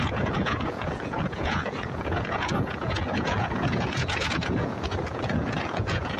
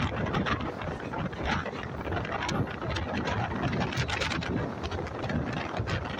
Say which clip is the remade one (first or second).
first